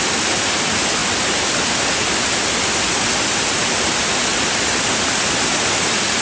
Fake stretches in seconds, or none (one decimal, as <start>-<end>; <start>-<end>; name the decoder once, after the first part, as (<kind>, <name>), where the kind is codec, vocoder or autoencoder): none